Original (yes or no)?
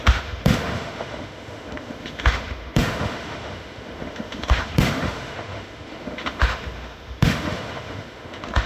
no